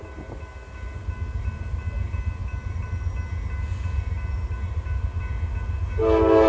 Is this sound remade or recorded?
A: recorded